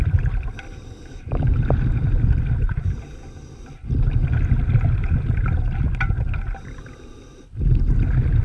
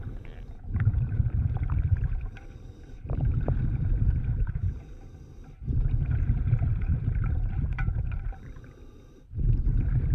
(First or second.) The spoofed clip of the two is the second